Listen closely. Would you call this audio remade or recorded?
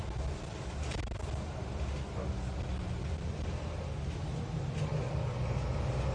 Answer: recorded